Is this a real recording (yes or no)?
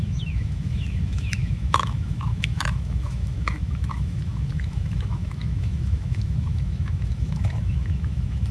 no